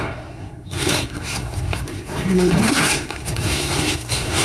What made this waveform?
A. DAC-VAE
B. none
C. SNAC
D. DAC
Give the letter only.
C